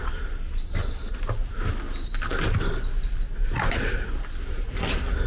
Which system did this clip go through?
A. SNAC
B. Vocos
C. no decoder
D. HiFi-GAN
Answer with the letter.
C